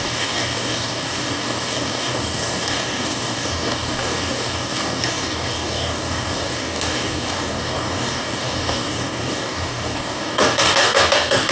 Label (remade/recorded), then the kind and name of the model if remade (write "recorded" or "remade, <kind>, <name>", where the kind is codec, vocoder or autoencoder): remade, codec, DAC